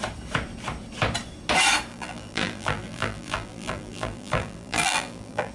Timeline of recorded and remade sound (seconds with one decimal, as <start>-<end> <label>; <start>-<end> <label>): 0.0-1.9 recorded; 1.9-5.5 remade